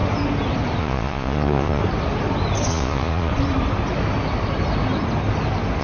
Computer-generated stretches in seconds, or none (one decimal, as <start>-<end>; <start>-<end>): 0.8-1.8; 2.7-3.3